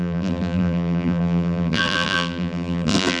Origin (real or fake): fake